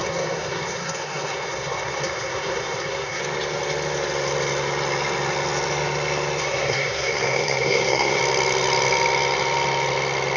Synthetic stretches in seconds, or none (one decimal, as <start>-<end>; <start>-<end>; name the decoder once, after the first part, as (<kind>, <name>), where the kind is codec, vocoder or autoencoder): 0.0-3.2 (codec, SNAC); 6.4-8.2